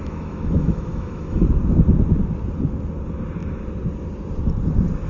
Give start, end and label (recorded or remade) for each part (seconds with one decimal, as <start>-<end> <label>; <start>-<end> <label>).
0.0-1.4 remade; 1.4-5.1 recorded